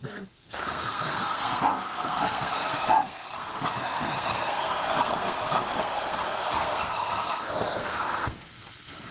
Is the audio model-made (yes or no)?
yes